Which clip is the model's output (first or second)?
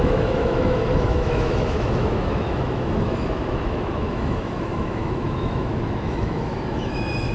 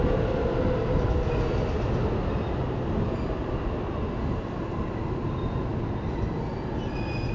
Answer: first